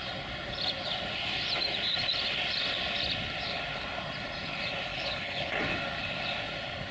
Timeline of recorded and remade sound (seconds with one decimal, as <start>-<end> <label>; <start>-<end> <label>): 0.0-4.9 recorded; 4.9-5.5 remade; 5.5-6.9 recorded